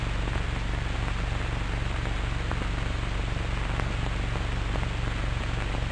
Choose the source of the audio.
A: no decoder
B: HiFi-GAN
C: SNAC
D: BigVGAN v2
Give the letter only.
A